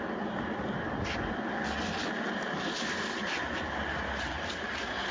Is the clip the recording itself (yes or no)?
yes